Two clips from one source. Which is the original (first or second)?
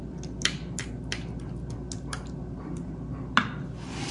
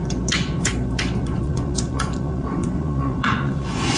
first